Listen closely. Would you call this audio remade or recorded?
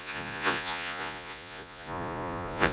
remade